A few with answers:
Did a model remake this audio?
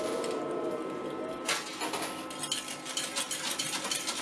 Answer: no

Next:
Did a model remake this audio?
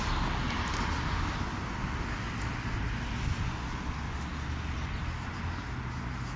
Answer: no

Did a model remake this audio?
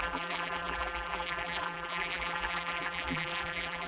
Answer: yes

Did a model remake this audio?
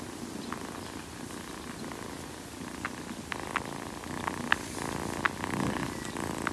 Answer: no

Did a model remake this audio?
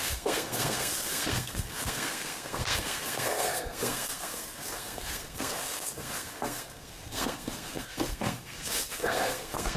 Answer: yes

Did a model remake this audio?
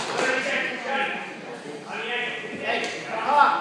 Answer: no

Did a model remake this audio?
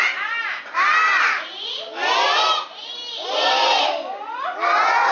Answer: no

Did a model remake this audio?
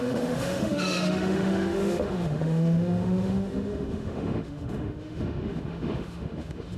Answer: yes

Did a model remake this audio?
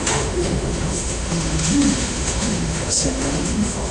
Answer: yes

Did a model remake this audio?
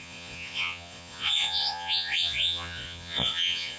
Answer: yes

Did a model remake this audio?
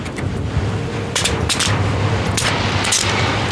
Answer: yes